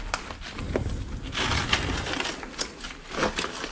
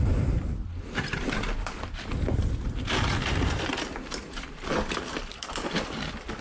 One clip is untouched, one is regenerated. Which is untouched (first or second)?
first